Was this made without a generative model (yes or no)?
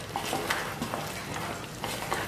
yes